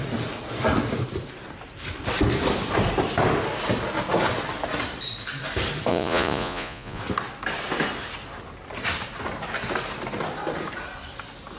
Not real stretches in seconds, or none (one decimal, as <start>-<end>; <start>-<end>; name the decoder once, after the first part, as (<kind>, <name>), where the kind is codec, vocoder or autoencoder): 5.9-7.0 (vocoder, Vocos)

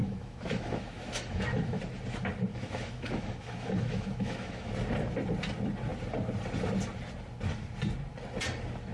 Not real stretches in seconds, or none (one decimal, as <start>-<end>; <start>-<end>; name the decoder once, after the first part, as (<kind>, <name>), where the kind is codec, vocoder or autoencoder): 0.0-1.8 (autoencoder, DAC-VAE); 2.5-4.7